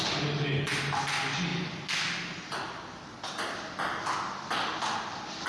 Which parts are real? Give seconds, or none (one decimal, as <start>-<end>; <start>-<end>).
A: 0.0-5.5